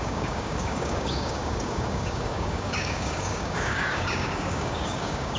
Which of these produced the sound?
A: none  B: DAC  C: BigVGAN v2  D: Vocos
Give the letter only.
B